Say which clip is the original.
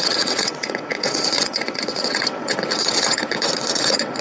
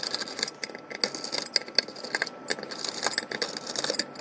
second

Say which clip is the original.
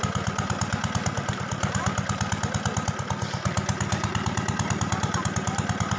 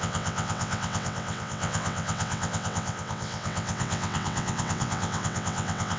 first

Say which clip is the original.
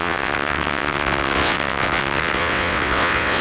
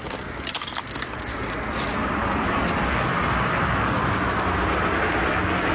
second